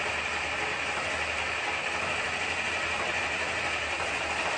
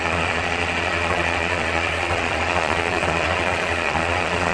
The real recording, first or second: first